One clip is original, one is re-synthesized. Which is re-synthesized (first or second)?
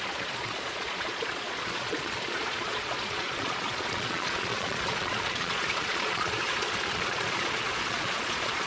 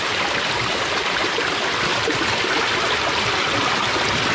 first